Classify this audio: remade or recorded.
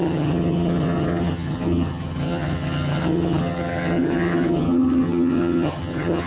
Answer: remade